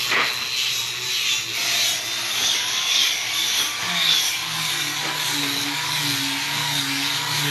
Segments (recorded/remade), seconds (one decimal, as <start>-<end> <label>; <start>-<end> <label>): 0.0-2.2 recorded; 2.2-6.0 remade; 6.0-6.6 recorded; 6.6-7.5 remade